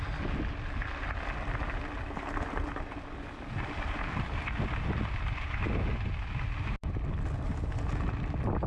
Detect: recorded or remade recorded